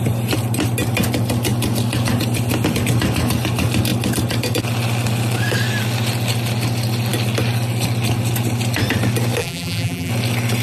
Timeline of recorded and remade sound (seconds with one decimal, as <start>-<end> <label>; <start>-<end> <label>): 0.0-9.4 recorded; 9.4-10.1 remade; 10.1-10.6 recorded